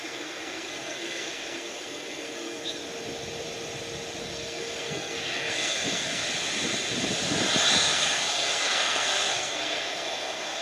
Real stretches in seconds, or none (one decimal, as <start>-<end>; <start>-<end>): 2.8-4.2; 6.2-7.7